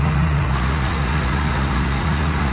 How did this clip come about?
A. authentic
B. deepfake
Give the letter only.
B